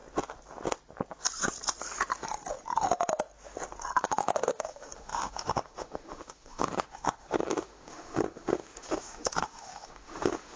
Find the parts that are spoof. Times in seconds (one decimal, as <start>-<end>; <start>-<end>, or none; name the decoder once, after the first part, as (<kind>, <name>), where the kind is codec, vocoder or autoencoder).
4.0-10.6 (autoencoder, DAC-VAE)